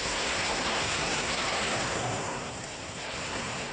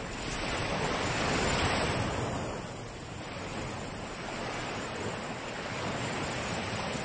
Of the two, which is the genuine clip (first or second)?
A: second